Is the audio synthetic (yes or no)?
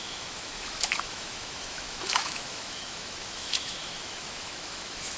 yes